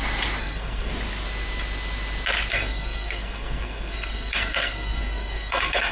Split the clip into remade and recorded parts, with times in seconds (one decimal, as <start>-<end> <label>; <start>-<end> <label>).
0.0-0.4 recorded; 0.4-0.9 remade; 0.9-2.5 recorded; 2.5-5.9 remade